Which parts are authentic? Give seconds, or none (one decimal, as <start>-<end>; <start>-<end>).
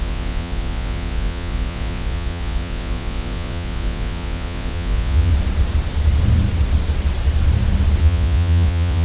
5.3-8.0